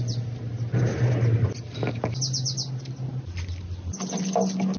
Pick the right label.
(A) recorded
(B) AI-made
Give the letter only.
A